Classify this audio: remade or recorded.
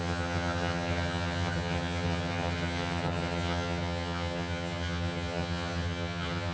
remade